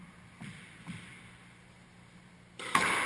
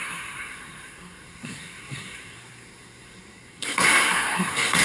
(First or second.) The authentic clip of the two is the first